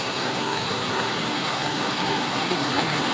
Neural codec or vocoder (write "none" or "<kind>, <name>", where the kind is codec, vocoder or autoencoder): codec, SNAC